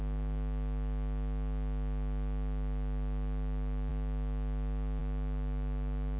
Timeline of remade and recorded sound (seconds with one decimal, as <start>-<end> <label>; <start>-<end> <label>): 0.0-6.2 recorded